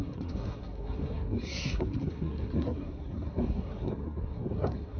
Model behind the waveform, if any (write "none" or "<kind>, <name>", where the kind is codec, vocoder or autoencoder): codec, SNAC